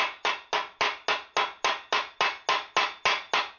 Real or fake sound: real